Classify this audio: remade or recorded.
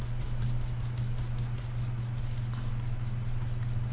recorded